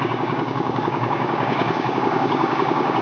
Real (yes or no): no